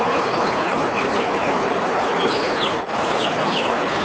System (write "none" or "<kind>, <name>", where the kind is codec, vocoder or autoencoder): codec, HILCodec